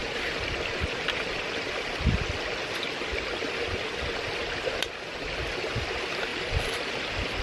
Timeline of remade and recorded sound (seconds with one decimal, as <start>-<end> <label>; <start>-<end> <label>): 0.0-6.3 recorded; 6.3-6.9 remade; 6.9-7.4 recorded